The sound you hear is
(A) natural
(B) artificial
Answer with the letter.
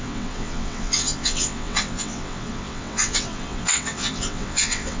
B